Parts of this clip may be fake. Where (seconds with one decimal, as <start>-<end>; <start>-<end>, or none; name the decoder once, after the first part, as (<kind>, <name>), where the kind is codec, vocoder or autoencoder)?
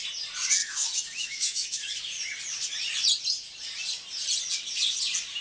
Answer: 0.6-1.9 (autoencoder, DAC-VAE)